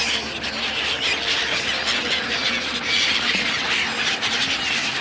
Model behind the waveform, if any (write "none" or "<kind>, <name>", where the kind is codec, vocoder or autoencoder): none